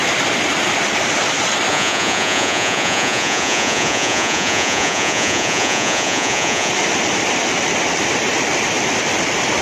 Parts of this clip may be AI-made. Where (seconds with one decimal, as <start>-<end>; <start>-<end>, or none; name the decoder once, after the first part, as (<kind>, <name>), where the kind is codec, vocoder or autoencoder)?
1.7-6.7 (vocoder, Vocos)